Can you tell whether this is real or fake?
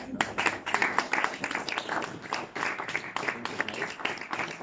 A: real